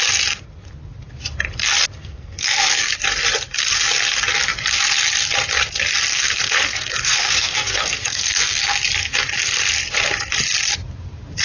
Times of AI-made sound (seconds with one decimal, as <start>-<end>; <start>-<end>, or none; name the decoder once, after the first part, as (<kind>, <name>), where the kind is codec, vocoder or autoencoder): 2.0-2.9 (codec, SNAC); 6.1-8.6